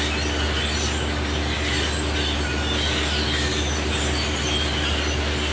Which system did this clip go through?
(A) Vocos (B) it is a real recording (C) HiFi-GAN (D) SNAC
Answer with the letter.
B